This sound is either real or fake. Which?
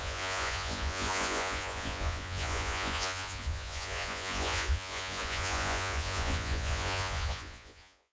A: fake